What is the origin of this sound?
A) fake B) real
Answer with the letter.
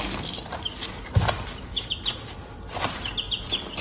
B